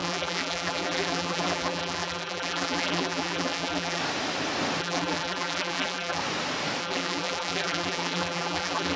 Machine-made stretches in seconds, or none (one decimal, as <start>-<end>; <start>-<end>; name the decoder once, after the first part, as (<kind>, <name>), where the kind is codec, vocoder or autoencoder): 0.0-4.0 (vocoder, BigVGAN v2); 4.8-6.2; 6.8-9.0

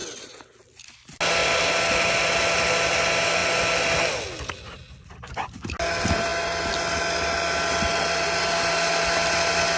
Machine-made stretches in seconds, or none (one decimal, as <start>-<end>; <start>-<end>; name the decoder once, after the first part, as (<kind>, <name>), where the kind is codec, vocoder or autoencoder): none

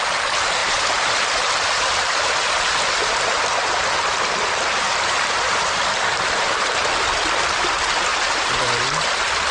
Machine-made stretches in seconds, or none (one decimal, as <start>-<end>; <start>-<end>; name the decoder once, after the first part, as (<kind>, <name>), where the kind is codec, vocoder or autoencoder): 0.6-2.6 (vocoder, BigVGAN v2); 3.0-6.8; 8.1-8.6